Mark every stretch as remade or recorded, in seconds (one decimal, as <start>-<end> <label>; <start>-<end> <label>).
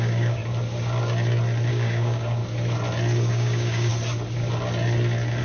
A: 0.0-0.4 remade; 0.4-1.7 recorded; 1.7-2.4 remade; 2.4-3.3 recorded; 3.3-3.9 remade; 3.9-5.4 recorded